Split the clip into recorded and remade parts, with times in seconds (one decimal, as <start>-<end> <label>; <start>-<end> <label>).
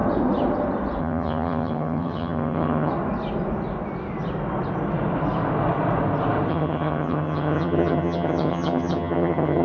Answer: 0.0-1.0 recorded; 1.0-2.9 remade; 2.9-6.5 recorded; 6.5-9.6 remade